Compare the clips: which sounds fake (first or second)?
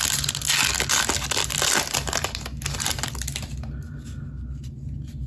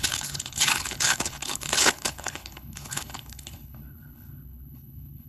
second